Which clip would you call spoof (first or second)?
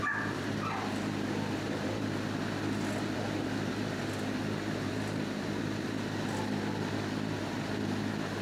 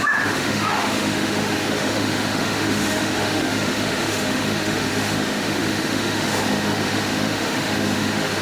second